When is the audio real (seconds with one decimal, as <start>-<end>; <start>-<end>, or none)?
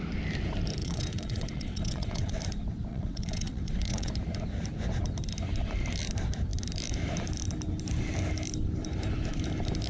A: 0.0-0.8; 2.4-2.9; 4.1-9.9